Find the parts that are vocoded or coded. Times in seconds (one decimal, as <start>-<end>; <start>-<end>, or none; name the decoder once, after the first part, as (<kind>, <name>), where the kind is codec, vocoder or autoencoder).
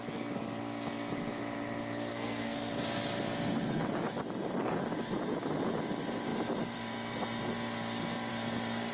2.1-2.7 (codec, SNAC)